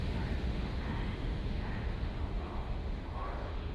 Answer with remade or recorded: remade